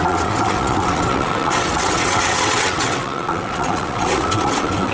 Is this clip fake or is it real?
fake